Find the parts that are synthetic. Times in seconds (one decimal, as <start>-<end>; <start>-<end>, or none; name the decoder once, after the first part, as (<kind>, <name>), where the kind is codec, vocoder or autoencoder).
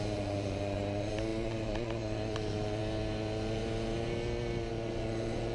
0.0-2.8 (vocoder, Vocos); 4.7-5.5